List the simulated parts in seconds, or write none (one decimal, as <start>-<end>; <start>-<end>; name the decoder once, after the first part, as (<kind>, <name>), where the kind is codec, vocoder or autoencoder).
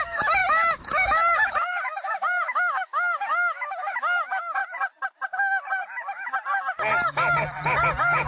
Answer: 0.0-4.6 (autoencoder, DAC-VAE)